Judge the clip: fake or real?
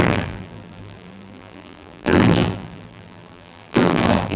fake